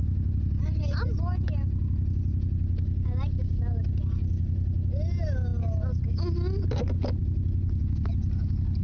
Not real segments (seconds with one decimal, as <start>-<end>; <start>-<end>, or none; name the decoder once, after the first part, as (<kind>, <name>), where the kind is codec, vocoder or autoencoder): none